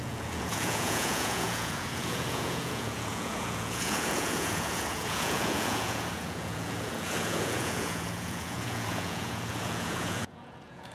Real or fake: fake